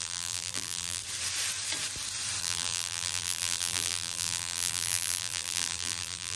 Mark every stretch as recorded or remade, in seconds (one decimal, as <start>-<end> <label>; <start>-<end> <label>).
0.0-1.0 remade; 1.0-2.4 recorded; 2.4-6.4 remade

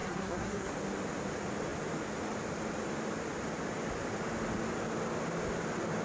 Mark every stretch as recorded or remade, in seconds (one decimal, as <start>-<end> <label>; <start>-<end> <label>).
0.0-0.7 remade; 0.7-6.0 recorded

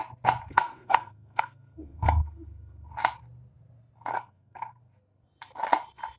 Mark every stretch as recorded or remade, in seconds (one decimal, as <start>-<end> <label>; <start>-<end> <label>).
0.0-0.5 recorded; 0.5-2.9 remade; 2.9-4.1 recorded; 4.1-4.8 remade; 4.8-6.2 recorded

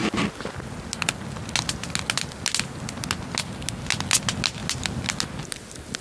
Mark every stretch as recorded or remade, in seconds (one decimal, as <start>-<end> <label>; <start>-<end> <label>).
0.0-6.0 recorded

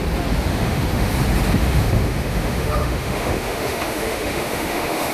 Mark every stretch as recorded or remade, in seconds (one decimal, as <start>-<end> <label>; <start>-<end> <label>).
0.0-0.5 recorded; 0.5-1.1 remade; 1.1-1.6 recorded; 1.6-5.1 remade

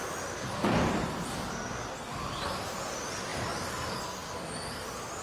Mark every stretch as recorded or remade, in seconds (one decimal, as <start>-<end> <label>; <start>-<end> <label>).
0.0-5.2 recorded